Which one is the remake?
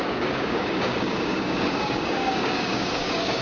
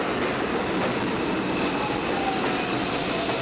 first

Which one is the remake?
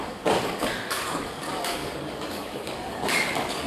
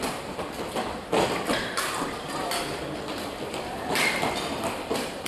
first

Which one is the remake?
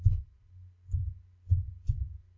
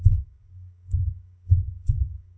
second